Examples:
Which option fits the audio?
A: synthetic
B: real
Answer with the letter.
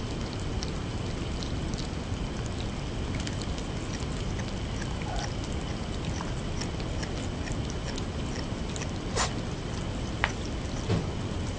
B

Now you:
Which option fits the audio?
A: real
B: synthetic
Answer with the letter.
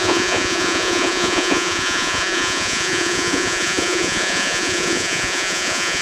B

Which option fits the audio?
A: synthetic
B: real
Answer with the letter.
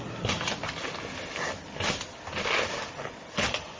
B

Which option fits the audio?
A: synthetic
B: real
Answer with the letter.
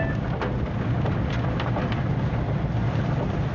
B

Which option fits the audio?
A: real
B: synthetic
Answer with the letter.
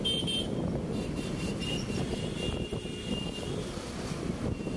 A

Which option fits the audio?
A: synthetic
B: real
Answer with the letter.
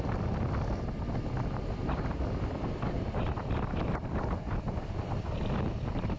B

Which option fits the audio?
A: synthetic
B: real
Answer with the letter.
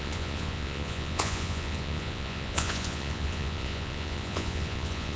A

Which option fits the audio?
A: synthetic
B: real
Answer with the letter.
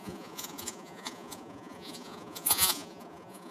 A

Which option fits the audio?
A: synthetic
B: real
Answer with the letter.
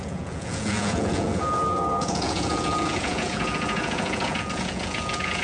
A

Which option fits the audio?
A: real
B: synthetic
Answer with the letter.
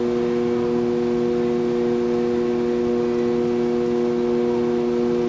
A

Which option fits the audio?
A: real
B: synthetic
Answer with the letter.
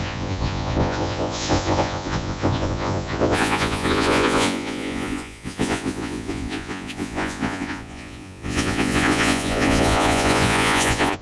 B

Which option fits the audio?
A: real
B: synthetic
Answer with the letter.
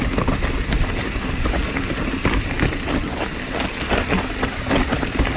A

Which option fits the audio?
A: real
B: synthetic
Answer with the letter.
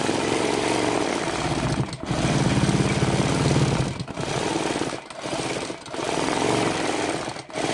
A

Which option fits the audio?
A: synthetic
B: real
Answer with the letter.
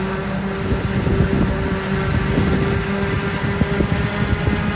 B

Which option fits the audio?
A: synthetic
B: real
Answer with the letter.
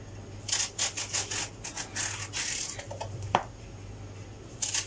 B